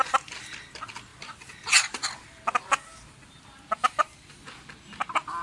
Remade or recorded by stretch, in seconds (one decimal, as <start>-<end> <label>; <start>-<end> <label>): 0.0-5.4 recorded